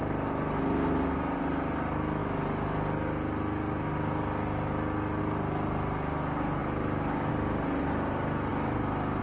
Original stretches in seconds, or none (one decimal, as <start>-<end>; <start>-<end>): 0.0-9.2